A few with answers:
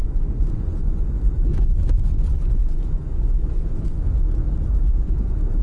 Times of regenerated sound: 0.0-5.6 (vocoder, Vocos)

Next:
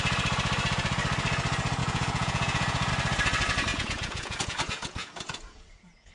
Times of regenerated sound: 1.8-2.9 (vocoder, Vocos); 3.7-6.1

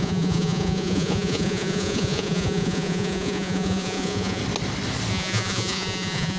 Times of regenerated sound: 0.0-4.4 (vocoder, Vocos); 5.1-6.4

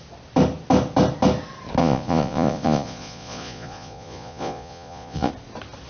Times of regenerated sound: 1.8-5.3 (vocoder, Vocos)